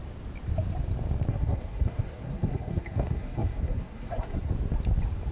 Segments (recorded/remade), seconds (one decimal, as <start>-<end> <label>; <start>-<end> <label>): 0.0-1.3 recorded; 1.3-4.5 remade; 4.5-5.3 recorded